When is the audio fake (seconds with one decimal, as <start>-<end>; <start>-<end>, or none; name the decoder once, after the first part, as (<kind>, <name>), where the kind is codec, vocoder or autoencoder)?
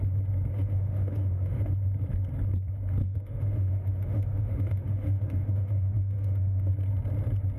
0.5-1.7 (autoencoder, DAC-VAE); 3.0-6.7